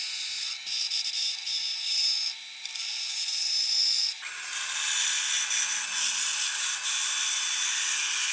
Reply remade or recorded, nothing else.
recorded